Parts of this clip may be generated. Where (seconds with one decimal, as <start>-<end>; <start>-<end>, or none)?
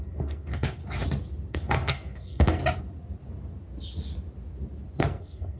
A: 0.0-0.8; 1.5-2.6; 5.0-5.6